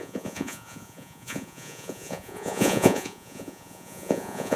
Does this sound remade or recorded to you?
remade